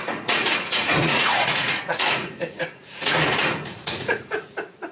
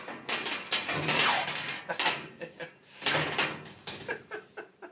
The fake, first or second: first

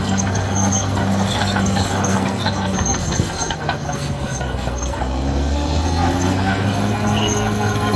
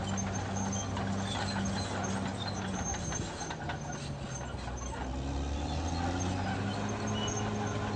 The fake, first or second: first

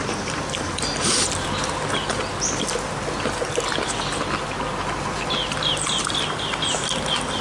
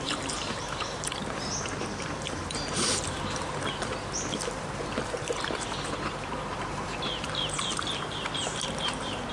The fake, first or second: second